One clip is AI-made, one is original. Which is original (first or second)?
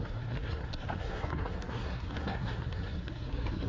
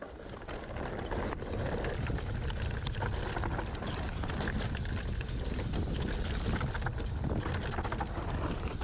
second